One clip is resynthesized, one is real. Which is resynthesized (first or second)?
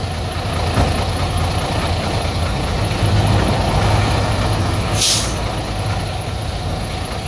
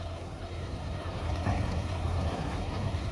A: second